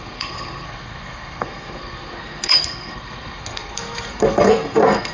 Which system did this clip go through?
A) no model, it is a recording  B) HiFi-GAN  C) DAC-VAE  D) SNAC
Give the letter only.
D